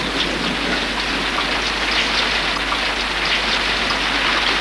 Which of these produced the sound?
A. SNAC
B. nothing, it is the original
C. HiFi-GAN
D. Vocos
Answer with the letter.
B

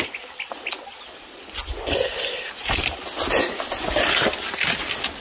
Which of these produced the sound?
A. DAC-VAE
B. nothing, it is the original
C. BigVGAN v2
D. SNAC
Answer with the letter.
B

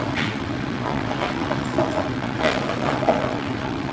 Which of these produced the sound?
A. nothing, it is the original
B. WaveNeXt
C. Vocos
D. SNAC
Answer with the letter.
B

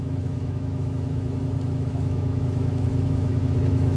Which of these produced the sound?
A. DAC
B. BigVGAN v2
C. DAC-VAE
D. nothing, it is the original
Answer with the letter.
C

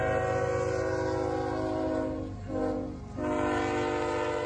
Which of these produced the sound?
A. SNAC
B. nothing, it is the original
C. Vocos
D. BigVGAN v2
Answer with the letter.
B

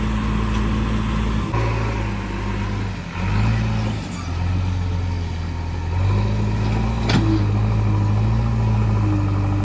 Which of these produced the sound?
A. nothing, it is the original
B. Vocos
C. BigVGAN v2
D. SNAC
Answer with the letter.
A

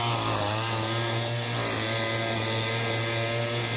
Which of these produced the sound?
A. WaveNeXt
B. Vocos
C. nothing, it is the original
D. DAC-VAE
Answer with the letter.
C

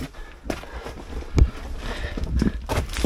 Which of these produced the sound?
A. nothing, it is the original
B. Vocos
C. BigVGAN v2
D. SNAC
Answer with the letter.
A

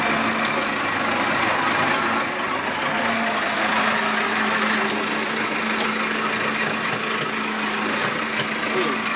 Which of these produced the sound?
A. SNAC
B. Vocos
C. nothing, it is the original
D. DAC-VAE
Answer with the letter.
C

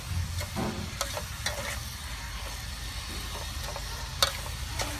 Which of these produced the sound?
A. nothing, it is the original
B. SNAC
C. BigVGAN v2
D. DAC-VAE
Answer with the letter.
A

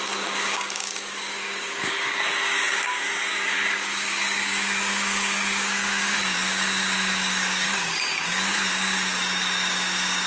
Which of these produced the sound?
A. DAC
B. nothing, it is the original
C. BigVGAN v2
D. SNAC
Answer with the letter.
A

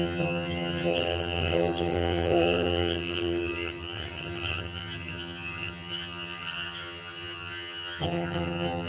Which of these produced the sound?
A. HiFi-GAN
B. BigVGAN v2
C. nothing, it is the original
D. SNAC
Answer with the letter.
A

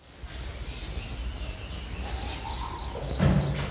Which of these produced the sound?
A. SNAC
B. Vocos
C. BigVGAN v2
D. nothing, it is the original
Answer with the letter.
D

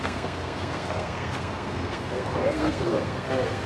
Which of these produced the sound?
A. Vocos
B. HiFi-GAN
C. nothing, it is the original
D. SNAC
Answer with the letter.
D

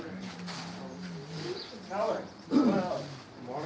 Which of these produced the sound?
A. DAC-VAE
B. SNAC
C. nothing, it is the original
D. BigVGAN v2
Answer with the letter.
C